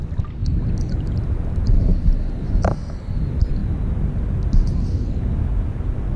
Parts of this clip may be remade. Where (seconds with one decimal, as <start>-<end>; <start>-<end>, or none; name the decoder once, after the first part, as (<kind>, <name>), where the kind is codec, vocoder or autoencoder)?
none